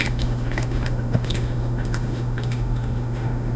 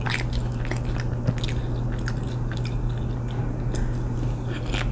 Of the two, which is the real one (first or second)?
second